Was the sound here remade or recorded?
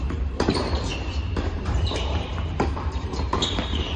remade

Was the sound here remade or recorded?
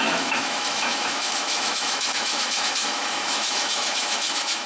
remade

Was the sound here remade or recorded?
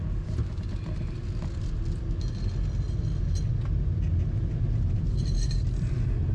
recorded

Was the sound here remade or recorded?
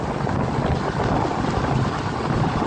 recorded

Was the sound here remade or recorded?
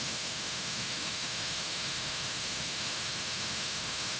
remade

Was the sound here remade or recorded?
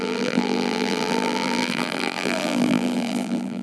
remade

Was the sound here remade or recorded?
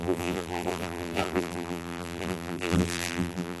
remade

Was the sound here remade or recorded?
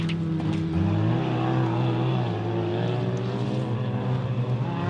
recorded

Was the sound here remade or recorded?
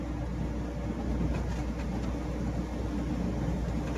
recorded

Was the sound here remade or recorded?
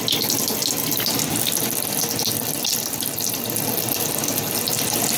recorded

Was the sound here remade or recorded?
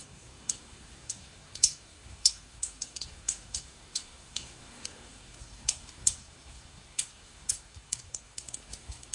remade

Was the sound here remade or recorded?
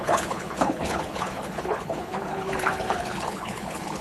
remade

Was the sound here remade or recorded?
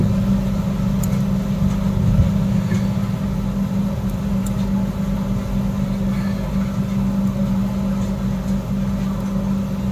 recorded